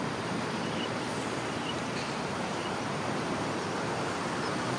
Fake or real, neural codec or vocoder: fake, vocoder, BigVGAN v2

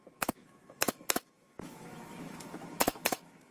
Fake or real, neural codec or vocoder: fake, autoencoder, DAC-VAE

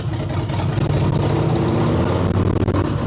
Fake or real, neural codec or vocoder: real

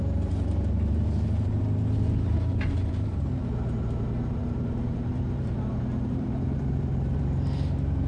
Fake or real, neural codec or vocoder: fake, vocoder, BigVGAN v2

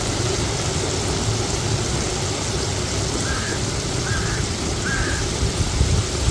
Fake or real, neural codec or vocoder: real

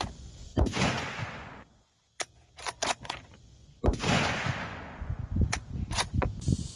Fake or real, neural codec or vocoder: fake, vocoder, Vocos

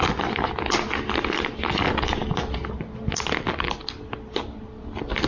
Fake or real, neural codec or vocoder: real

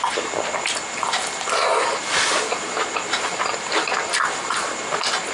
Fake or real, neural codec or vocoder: real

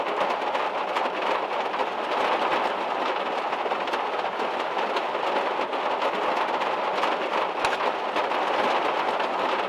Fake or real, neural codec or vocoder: real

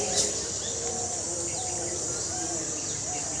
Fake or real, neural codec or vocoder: real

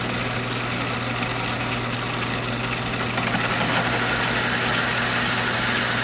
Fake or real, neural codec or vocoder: real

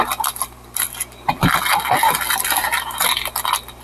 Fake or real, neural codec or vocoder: real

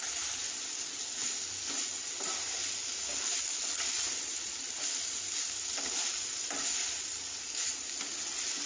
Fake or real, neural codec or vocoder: real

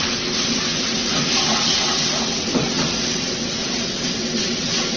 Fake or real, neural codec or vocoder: fake, vocoder, WaveNeXt